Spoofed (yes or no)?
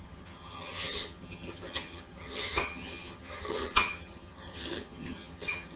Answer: yes